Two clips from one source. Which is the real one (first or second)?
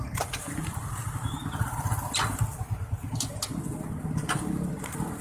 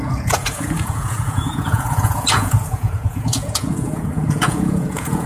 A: first